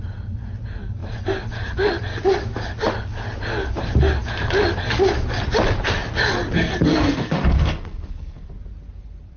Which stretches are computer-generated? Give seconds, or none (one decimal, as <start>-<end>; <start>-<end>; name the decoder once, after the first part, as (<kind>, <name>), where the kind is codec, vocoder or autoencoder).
6.9-8.5 (codec, SNAC)